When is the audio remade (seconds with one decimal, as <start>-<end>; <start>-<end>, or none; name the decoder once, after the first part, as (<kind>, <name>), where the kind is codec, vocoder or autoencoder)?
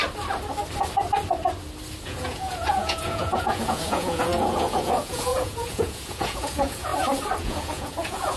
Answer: 2.0-6.9 (vocoder, Vocos); 7.4-8.4